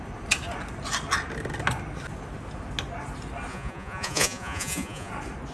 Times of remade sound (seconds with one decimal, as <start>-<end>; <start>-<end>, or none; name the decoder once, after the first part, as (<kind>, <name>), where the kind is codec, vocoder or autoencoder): 3.5-5.1 (vocoder, Vocos)